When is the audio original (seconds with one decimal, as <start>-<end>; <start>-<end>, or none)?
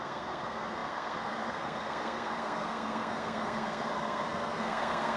none